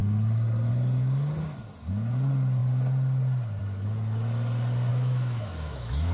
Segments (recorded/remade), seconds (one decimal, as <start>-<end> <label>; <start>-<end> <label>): 0.0-4.9 recorded; 4.9-6.1 remade